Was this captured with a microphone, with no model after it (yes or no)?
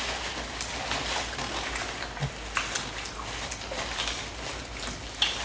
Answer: yes